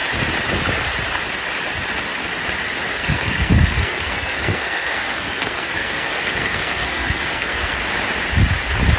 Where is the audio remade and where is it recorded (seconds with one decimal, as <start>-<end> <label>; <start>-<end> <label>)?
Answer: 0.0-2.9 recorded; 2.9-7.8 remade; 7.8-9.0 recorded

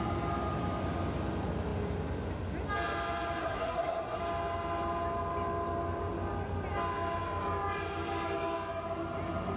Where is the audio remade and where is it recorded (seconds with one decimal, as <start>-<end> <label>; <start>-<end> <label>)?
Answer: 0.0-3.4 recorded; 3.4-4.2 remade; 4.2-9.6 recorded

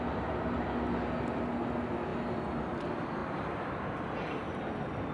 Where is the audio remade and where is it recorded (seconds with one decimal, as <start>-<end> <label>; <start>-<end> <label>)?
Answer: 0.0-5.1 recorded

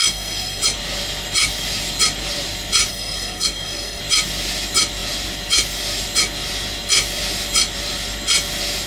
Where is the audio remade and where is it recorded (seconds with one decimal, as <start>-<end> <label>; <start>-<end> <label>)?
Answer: 0.0-0.6 remade; 0.6-2.9 recorded; 2.9-4.0 remade; 4.0-8.9 recorded

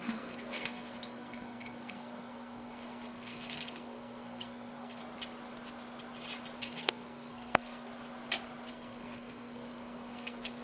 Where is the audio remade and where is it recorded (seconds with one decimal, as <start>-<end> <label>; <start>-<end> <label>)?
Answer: 0.0-5.0 remade; 5.0-6.6 recorded; 6.6-7.9 remade; 7.9-8.7 recorded; 8.7-10.6 remade

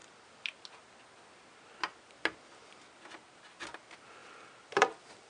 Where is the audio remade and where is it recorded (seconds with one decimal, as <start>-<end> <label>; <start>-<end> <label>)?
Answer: 0.0-5.3 recorded

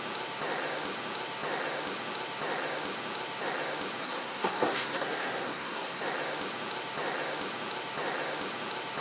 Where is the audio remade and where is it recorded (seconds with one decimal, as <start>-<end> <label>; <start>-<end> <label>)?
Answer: 0.0-4.0 recorded; 4.0-6.0 remade; 6.0-9.0 recorded